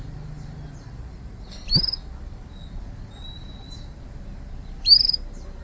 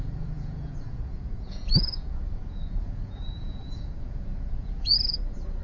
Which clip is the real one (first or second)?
first